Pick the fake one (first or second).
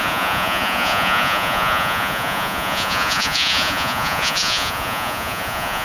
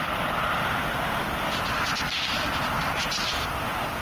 first